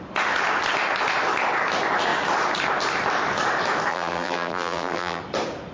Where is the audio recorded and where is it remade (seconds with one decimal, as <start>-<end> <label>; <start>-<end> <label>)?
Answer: 0.0-3.9 recorded; 3.9-5.2 remade; 5.2-5.7 recorded